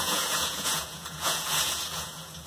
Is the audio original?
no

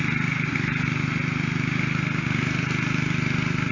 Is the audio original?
yes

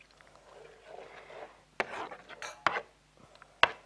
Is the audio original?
yes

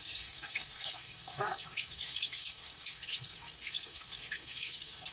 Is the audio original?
no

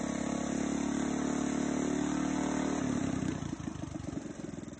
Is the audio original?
yes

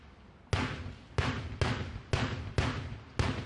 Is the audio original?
yes